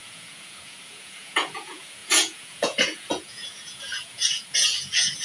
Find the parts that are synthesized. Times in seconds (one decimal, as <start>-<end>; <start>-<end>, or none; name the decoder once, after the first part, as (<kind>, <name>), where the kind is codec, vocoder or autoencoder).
0.0-5.2 (vocoder, Vocos)